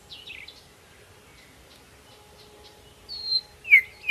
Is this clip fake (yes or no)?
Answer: no